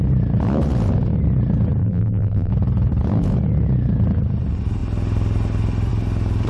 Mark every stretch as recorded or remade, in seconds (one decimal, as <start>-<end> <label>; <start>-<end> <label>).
0.0-1.8 recorded; 1.8-2.5 remade; 2.5-6.5 recorded